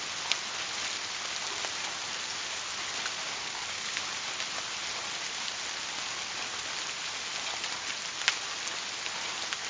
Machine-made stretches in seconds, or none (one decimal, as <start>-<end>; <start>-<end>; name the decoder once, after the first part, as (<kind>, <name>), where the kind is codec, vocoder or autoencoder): 3.4-4.0 (codec, DAC)

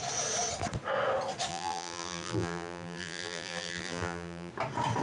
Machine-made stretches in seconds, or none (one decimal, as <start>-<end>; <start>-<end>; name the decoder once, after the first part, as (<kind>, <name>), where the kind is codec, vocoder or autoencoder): 1.5-4.5 (vocoder, BigVGAN v2)

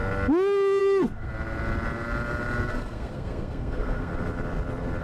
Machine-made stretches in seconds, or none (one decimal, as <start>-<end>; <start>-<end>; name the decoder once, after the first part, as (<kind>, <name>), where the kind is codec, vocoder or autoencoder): 0.8-1.3 (codec, SNAC); 2.7-4.1

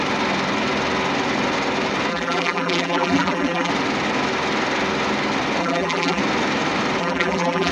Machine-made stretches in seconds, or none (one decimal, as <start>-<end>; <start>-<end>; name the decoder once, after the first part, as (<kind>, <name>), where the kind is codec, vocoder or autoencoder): 2.1-3.7 (vocoder, BigVGAN v2); 5.6-6.2; 7.0-7.7